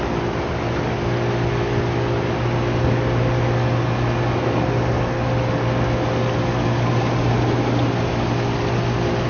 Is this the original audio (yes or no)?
yes